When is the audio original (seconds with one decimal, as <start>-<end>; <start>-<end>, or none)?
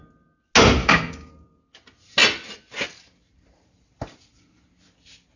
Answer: 0.0-0.8; 1.3-5.4